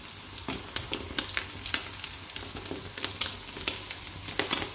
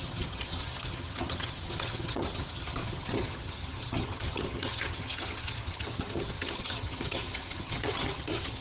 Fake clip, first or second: second